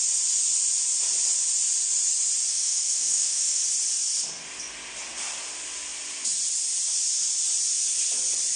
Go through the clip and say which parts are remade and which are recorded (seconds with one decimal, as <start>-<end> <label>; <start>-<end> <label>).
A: 0.0-2.5 recorded; 2.5-3.6 remade; 3.6-8.6 recorded

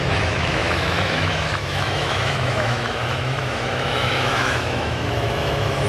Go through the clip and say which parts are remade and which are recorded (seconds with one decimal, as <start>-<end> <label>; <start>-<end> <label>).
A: 0.0-5.9 remade